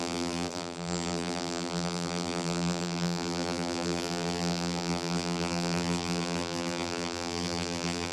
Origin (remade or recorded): remade